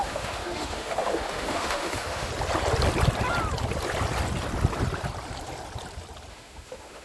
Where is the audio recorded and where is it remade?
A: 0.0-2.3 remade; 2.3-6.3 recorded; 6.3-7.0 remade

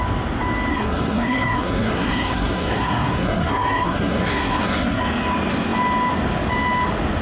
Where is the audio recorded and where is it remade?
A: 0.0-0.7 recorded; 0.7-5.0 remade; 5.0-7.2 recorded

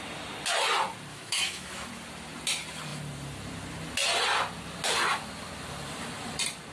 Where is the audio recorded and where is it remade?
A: 0.0-1.1 recorded; 1.1-1.9 remade; 1.9-6.7 recorded

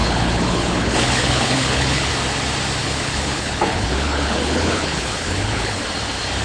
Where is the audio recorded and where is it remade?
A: 0.0-2.1 remade; 2.1-2.8 recorded; 2.8-5.8 remade; 5.8-6.4 recorded

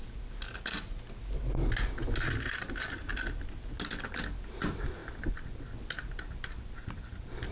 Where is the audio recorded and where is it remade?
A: 0.0-7.5 recorded